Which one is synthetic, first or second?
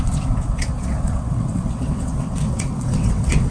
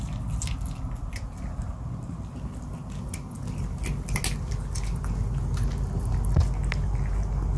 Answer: first